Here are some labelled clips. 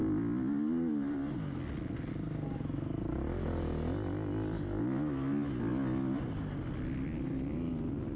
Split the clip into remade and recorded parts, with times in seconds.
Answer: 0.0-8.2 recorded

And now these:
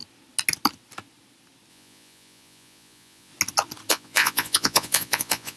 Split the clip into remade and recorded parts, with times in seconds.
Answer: 0.0-1.7 recorded; 1.7-3.3 remade; 3.3-3.9 recorded; 3.9-5.6 remade

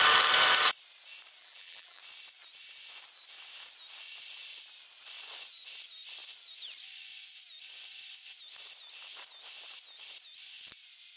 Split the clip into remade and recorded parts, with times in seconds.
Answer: 0.0-1.4 recorded; 1.4-2.0 remade; 2.0-11.2 recorded